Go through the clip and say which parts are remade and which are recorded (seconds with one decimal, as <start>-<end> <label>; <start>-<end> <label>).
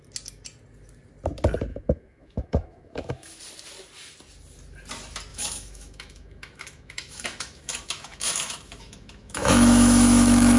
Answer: 0.0-1.7 recorded; 1.7-3.4 remade; 3.4-5.3 recorded; 5.3-10.6 remade